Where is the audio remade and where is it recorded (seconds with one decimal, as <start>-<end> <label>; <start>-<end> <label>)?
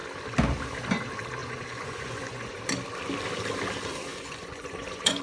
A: 0.0-1.4 recorded; 1.4-2.6 remade; 2.6-4.1 recorded; 4.1-5.2 remade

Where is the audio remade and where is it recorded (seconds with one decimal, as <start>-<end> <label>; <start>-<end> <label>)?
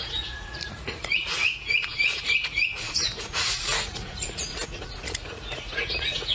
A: 0.0-6.3 remade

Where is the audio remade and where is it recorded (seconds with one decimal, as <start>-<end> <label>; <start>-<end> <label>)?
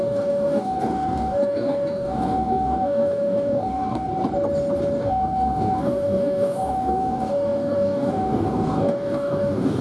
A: 0.0-4.1 remade; 4.1-5.0 recorded; 5.0-9.8 remade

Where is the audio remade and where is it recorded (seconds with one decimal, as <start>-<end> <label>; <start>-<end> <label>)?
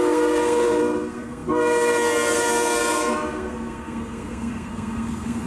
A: 0.0-5.5 remade